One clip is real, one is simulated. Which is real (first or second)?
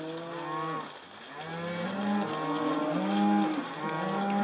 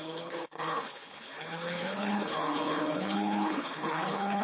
first